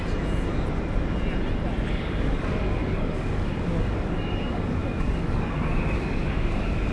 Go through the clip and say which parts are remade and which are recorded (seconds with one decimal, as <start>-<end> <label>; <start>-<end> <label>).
0.0-1.9 recorded; 1.9-6.9 remade